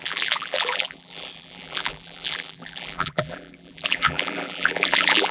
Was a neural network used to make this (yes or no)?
yes